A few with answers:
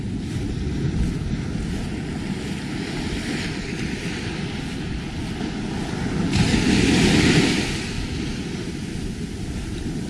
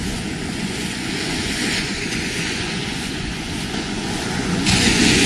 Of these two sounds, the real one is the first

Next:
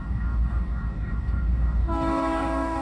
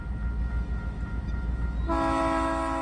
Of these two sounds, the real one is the second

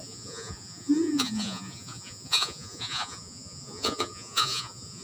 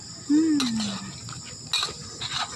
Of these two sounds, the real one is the second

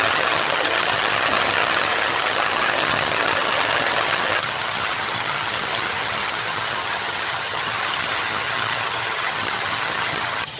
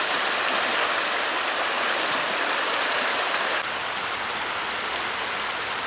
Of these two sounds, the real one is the second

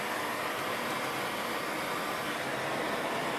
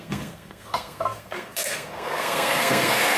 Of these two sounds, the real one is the first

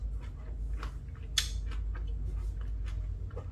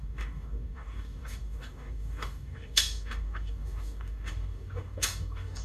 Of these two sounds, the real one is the first